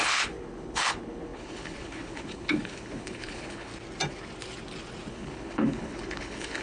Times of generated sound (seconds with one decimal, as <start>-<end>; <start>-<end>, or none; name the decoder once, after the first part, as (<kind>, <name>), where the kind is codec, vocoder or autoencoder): 0.0-3.7 (codec, HILCodec); 5.1-6.6